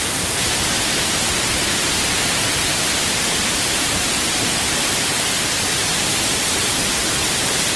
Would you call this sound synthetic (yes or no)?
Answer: yes